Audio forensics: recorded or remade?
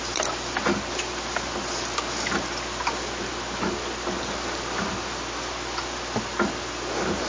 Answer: recorded